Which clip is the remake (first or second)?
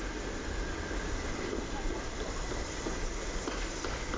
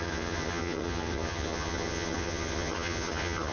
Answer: second